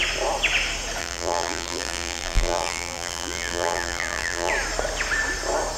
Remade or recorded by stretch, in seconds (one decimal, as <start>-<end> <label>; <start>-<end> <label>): 0.0-1.0 recorded; 1.0-4.5 remade; 4.5-5.8 recorded